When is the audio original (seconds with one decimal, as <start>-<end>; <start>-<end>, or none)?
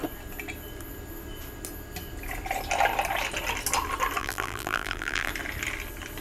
0.0-4.2; 5.3-6.2